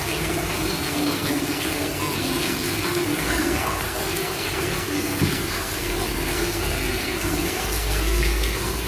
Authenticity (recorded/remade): remade